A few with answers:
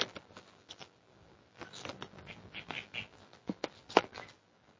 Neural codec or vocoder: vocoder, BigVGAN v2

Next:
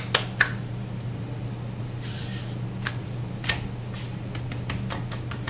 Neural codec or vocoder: none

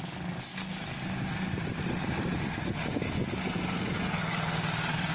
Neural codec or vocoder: none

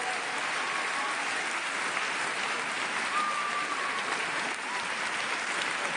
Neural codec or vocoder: none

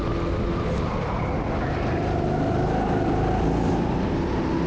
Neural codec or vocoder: none